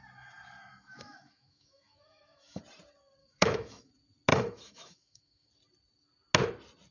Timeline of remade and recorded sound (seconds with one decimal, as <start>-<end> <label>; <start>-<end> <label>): 0.0-0.7 recorded; 0.7-2.6 remade; 2.6-3.2 recorded; 3.2-3.9 remade; 3.9-4.3 recorded; 4.3-5.5 remade; 5.5-6.9 recorded